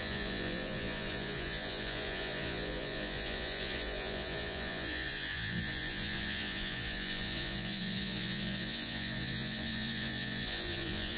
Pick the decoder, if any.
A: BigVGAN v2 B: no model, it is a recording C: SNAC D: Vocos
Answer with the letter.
D